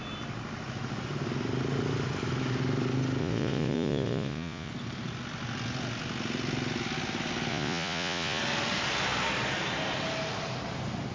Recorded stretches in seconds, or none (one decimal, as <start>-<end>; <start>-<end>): 0.0-3.2; 4.7-7.5; 8.4-11.1